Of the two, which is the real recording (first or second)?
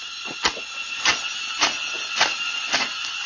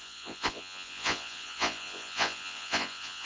first